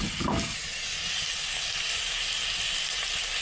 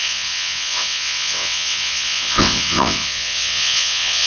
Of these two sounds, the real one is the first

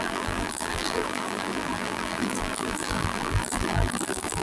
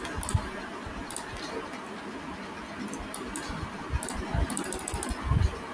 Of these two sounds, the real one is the second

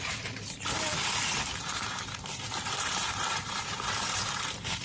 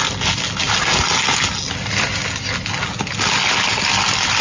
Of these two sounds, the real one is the second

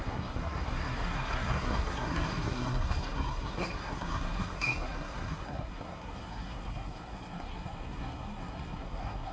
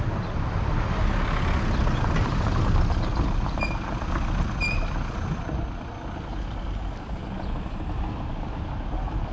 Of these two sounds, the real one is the second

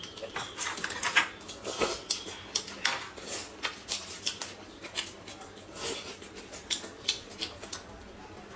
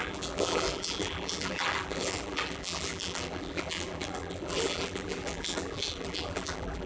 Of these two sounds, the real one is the first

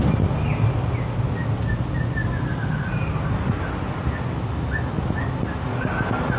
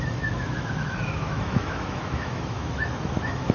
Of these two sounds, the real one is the first